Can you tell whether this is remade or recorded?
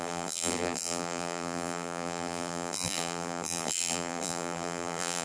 remade